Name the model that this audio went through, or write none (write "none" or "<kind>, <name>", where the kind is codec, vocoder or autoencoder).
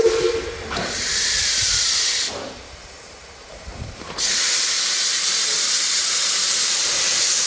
vocoder, BigVGAN v2